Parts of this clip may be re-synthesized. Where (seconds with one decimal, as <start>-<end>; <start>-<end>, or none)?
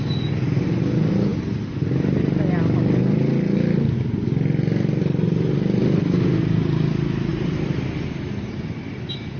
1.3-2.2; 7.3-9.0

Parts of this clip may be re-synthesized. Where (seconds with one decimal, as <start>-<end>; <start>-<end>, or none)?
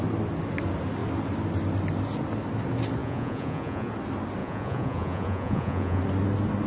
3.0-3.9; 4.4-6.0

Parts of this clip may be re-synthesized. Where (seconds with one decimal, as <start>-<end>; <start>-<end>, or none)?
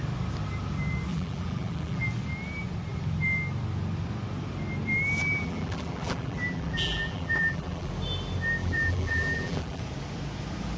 1.1-2.1; 5.2-7.9; 8.6-9.8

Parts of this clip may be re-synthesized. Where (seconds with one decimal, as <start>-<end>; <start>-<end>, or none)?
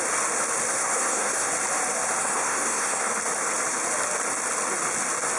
0.7-1.5; 2.2-3.1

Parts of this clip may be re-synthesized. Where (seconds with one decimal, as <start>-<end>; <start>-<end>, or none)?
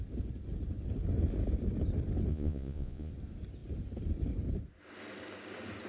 2.3-3.1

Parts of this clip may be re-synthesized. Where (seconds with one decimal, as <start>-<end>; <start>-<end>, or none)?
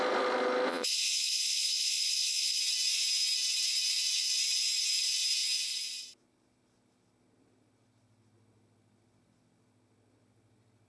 0.7-2.6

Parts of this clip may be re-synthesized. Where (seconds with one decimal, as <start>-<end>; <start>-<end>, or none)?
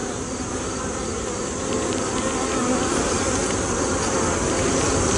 0.0-2.0; 2.6-3.1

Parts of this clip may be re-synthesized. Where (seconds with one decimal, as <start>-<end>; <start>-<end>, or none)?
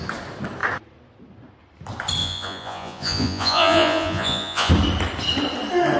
2.2-4.7